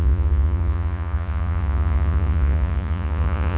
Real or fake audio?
fake